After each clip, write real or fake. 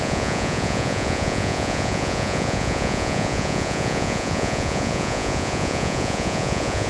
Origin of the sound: fake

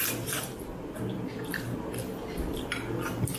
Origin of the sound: real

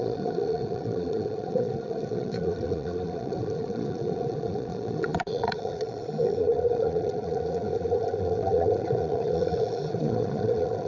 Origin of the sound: fake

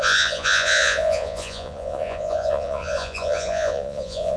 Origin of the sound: fake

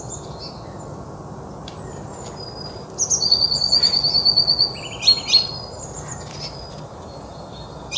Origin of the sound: real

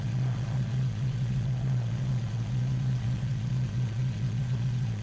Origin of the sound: fake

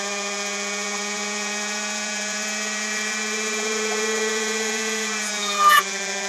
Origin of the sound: fake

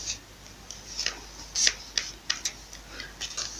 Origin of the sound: real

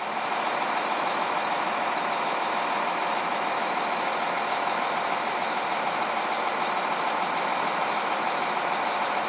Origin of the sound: real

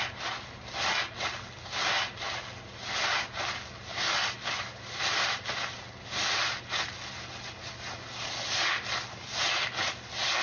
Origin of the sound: real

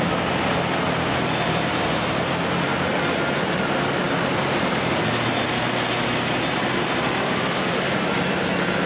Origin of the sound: real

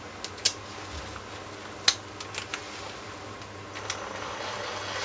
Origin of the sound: real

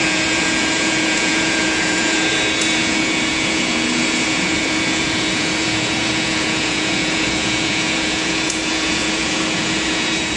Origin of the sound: fake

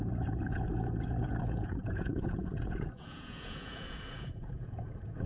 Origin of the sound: fake